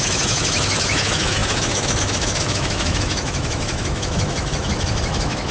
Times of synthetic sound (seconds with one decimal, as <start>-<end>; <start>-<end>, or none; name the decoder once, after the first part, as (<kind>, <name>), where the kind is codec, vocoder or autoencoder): 0.0-5.5 (autoencoder, DAC-VAE)